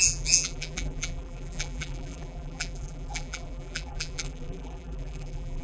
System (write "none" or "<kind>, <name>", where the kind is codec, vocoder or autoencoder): vocoder, BigVGAN v2